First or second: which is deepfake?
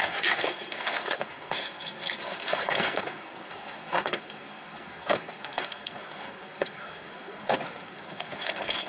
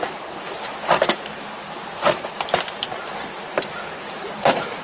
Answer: first